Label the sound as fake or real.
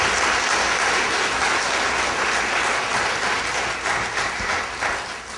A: real